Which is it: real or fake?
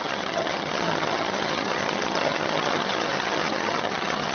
fake